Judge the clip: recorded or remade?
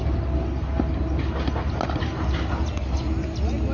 recorded